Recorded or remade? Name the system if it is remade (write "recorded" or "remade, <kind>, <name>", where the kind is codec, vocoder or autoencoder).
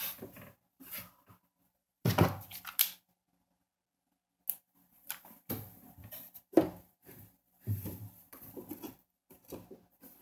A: recorded